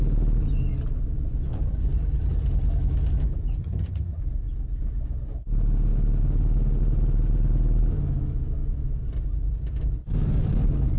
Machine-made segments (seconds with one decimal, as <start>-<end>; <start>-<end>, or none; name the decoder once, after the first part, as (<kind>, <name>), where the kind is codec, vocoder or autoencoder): 3.6-4.2 (vocoder, HiFi-GAN)